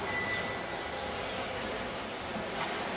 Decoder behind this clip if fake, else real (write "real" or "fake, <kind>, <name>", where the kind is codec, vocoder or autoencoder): real